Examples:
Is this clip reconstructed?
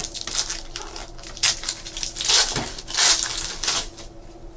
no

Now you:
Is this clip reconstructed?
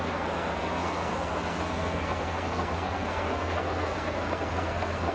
yes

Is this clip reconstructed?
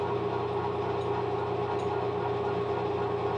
no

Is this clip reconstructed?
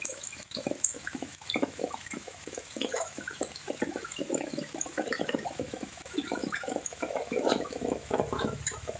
yes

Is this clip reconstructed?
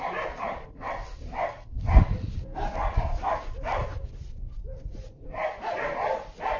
no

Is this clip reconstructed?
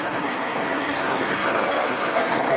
yes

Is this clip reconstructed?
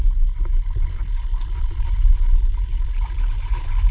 no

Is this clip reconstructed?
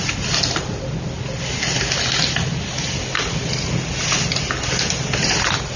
no